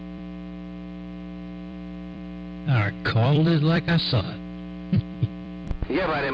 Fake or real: fake